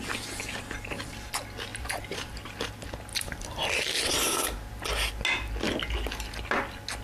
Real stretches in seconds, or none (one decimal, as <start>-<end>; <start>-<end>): 0.0-1.7; 2.7-3.1; 4.7-7.0